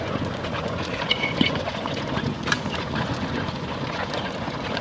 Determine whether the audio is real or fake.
fake